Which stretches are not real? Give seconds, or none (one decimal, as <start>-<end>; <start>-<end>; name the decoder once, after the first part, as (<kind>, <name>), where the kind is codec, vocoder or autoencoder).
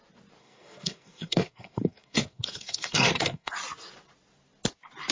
0.4-3.5 (codec, SNAC)